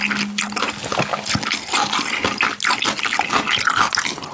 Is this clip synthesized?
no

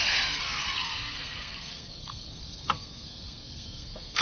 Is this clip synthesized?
yes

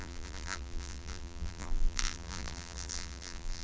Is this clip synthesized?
yes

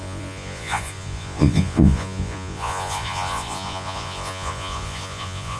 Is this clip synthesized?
yes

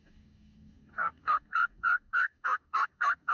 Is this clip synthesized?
yes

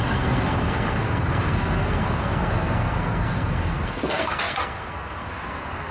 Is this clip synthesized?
yes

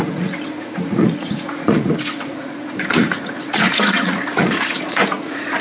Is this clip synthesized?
yes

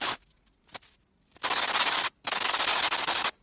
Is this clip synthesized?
no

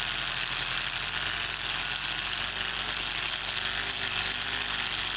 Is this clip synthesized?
no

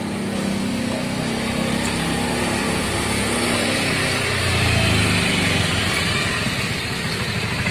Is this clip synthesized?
no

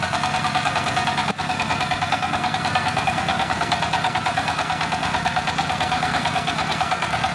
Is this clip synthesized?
yes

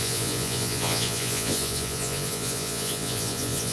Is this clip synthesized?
yes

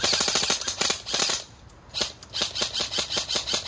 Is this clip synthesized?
no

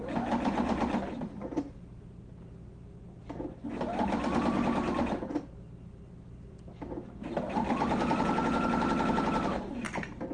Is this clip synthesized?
no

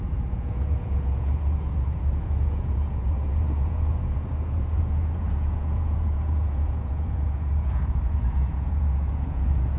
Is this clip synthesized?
yes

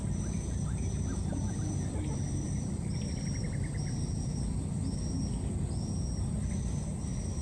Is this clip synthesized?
no